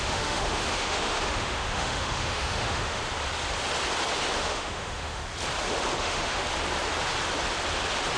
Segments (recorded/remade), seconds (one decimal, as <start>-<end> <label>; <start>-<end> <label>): 0.0-3.0 remade; 3.0-4.4 recorded; 4.4-5.2 remade; 5.2-6.0 recorded; 6.0-6.4 remade; 6.4-8.2 recorded